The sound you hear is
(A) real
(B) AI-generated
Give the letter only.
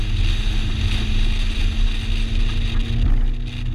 A